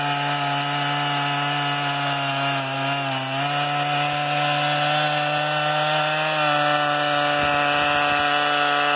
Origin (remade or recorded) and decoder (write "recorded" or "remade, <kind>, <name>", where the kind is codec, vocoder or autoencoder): recorded